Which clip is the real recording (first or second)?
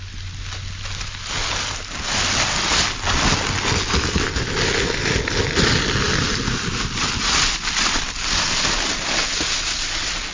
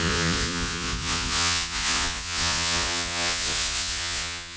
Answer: first